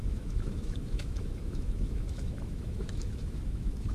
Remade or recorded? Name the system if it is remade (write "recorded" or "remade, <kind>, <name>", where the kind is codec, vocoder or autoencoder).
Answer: remade, autoencoder, DAC-VAE